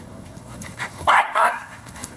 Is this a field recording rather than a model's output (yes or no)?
no